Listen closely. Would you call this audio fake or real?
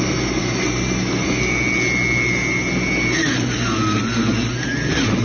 real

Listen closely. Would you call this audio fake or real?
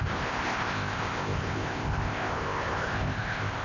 fake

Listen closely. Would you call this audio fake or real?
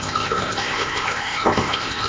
fake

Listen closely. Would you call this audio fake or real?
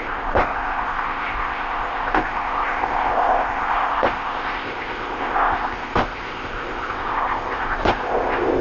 fake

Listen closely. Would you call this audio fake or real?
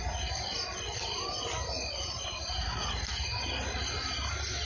real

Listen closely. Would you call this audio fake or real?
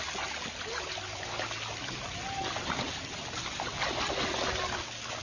real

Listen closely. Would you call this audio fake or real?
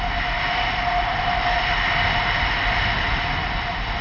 real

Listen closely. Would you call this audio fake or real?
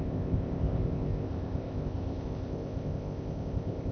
fake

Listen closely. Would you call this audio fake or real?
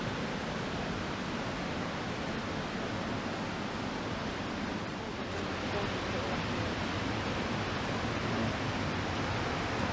real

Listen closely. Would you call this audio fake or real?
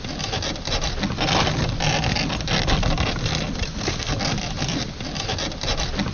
real